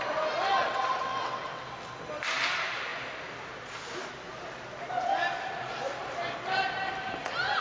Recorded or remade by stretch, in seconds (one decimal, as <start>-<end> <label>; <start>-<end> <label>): 0.0-0.5 recorded; 0.5-1.6 remade; 1.6-7.6 recorded